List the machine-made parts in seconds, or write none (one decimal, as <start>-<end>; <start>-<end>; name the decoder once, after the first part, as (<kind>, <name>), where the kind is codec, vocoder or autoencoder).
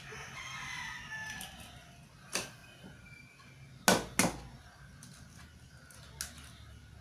none